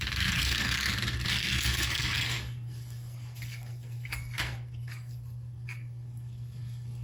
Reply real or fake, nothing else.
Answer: fake